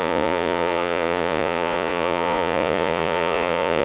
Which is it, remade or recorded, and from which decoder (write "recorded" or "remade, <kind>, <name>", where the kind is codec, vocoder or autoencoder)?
remade, vocoder, Vocos